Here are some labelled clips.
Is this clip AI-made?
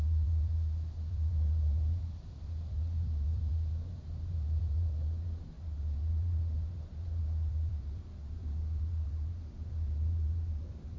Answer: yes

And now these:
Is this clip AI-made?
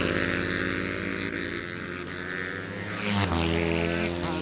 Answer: no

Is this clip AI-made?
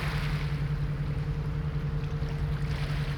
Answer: no